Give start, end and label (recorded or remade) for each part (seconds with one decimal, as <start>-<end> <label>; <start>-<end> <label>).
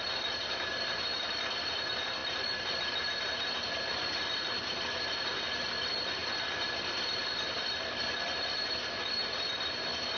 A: 0.0-10.2 recorded